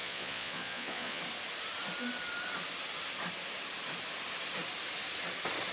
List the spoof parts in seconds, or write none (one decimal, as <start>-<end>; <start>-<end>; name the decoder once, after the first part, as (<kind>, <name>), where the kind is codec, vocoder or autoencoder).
0.0-1.2 (vocoder, Vocos)